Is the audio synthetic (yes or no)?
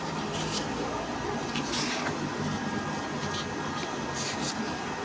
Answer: no